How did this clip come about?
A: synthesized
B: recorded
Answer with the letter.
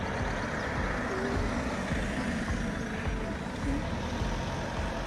B